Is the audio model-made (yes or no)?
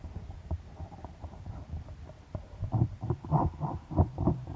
yes